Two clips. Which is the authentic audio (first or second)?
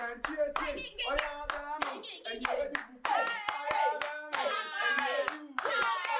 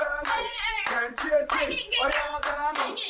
first